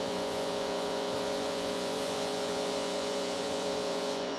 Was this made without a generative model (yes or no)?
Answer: no